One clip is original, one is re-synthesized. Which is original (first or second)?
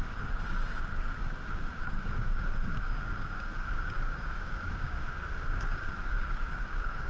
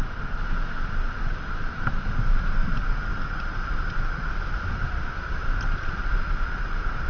second